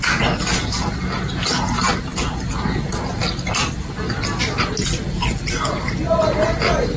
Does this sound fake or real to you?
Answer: real